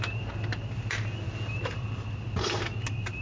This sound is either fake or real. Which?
real